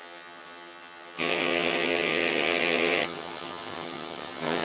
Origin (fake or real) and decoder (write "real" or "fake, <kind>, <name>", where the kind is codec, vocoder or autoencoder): fake, vocoder, HiFi-GAN